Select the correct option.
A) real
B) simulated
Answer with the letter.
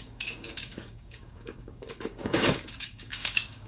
B